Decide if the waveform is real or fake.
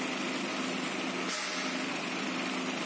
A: real